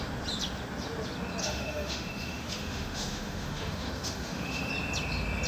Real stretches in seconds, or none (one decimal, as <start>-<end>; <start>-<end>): 0.0-1.4; 4.7-5.5